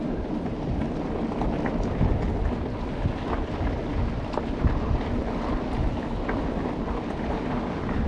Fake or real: real